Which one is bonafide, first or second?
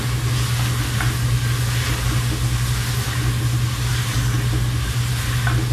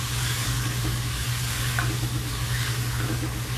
first